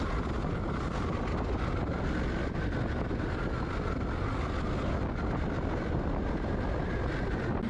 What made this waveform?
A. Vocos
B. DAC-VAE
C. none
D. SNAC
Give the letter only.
C